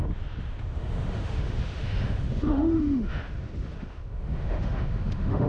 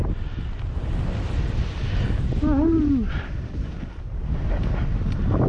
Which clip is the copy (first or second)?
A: first